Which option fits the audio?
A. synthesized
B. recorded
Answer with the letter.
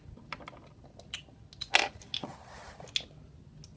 B